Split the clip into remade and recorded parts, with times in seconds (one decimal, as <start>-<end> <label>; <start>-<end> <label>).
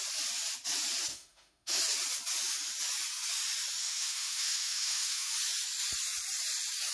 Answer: 0.0-1.1 recorded; 1.1-1.8 remade; 1.8-3.8 recorded; 3.8-5.3 remade; 5.3-6.9 recorded